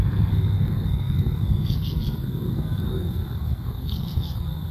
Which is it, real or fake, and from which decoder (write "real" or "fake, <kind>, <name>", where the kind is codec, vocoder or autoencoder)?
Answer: fake, codec, SNAC